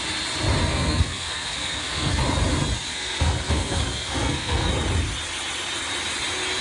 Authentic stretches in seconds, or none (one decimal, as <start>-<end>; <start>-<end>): 0.0-0.6; 2.2-2.9; 4.7-6.6